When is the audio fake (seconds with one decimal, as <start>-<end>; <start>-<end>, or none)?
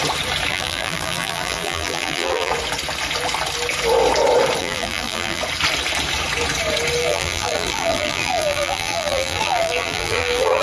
0.5-2.5; 4.6-5.4; 7.0-10.6